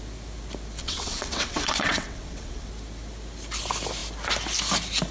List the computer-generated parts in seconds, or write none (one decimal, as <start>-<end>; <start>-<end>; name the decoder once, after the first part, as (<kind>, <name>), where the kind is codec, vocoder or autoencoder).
0.8-2.7 (vocoder, WaveNeXt)